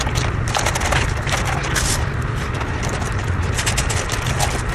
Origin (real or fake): real